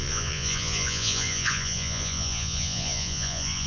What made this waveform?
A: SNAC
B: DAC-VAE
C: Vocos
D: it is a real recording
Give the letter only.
C